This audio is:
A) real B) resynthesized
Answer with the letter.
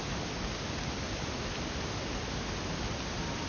A